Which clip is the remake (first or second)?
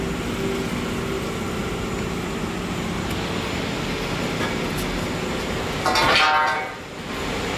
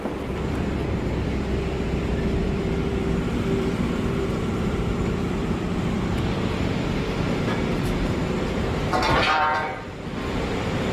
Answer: second